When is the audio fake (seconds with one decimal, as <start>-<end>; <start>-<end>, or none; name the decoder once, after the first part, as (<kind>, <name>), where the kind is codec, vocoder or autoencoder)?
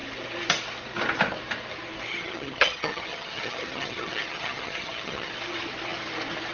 2.1-5.3 (vocoder, HiFi-GAN)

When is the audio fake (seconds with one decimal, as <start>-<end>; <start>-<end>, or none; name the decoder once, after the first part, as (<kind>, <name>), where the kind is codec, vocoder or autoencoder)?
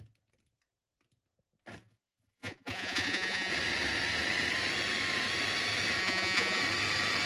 1.8-3.5 (vocoder, Vocos); 6.0-6.6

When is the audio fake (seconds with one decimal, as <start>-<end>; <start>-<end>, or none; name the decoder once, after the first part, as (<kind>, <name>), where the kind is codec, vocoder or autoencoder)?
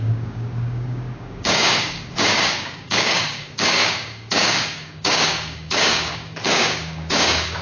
0.0-7.6 (codec, DAC)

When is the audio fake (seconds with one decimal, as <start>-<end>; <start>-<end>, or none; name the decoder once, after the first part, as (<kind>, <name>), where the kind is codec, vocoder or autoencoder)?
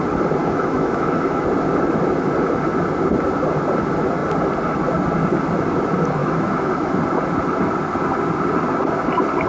0.4-1.4 (autoencoder, DAC-VAE); 6.2-6.9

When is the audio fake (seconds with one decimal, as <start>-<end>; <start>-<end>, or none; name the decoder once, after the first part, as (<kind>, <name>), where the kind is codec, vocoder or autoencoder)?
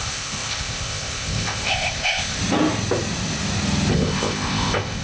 0.0-2.4 (codec, ZipCodec); 3.9-5.0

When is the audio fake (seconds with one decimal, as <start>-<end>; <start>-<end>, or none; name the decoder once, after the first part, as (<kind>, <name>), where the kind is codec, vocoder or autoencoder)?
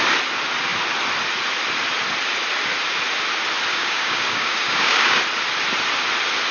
3.7-5.2 (codec, DAC)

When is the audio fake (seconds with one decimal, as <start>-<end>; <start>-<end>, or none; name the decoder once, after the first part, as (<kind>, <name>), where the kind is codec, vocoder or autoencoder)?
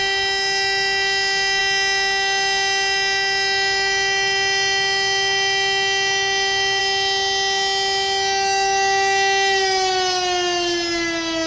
none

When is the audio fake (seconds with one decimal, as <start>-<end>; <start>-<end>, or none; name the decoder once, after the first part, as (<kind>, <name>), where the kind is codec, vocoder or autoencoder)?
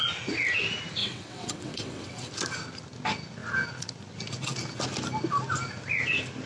1.0-2.3 (vocoder, WaveNeXt)